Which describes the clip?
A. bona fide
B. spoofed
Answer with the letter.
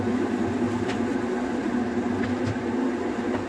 A